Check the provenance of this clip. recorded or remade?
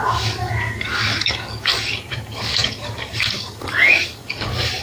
remade